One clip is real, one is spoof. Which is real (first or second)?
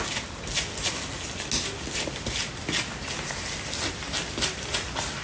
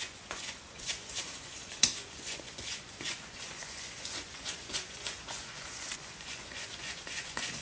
first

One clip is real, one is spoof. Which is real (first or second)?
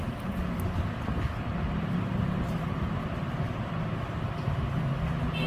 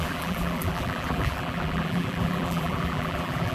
first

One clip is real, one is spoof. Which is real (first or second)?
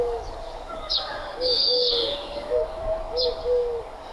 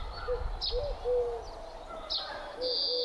second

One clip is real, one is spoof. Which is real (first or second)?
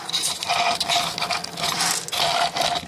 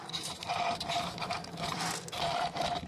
first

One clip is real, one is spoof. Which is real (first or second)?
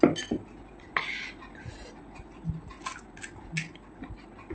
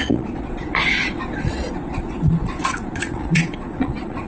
first